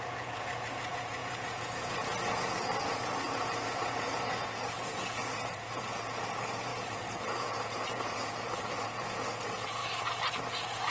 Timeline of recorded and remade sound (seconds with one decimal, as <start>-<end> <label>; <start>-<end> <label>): 0.0-9.8 remade; 9.8-10.4 recorded; 10.4-10.9 remade